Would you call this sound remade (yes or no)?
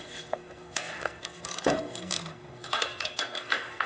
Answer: yes